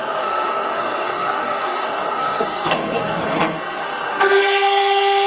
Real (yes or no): no